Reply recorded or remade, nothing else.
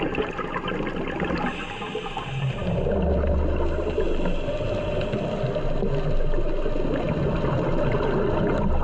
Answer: recorded